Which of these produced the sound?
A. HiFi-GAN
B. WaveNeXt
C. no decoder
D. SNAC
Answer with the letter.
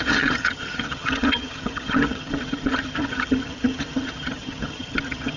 A